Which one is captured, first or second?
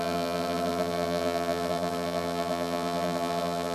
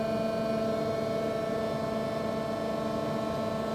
second